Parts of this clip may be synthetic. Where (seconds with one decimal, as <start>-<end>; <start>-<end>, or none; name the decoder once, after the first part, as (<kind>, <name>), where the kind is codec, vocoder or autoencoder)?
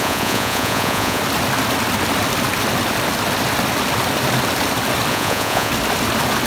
0.0-1.2 (vocoder, Vocos); 5.1-5.7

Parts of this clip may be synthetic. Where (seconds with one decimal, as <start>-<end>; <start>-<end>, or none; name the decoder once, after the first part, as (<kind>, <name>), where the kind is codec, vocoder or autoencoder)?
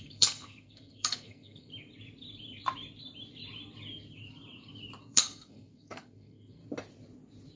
0.0-1.7 (codec, SNAC); 5.0-6.6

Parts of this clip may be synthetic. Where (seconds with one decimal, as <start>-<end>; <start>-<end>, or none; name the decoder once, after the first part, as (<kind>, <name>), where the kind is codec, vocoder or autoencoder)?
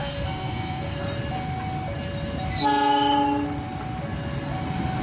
0.0-1.0 (codec, SNAC)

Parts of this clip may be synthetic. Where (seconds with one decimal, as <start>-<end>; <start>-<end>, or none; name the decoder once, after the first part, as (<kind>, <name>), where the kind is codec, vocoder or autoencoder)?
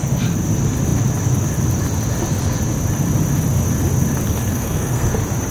4.5-5.1 (codec, SNAC)